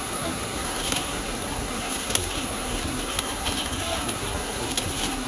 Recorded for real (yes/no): no